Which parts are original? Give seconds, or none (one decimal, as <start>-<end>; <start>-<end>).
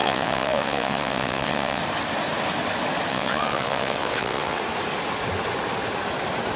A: 1.8-3.1; 4.6-6.6